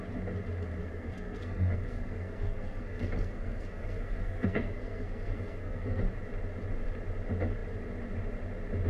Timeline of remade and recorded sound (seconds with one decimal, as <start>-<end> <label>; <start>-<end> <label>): 0.0-0.8 recorded; 0.8-6.0 remade; 6.0-8.9 recorded